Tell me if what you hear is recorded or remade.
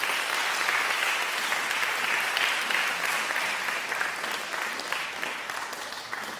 recorded